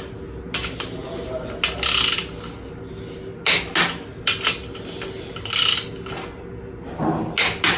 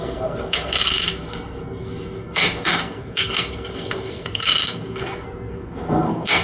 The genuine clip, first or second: first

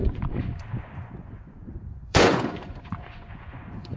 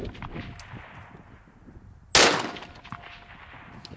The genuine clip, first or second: second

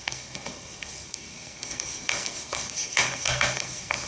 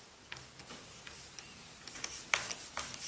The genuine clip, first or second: second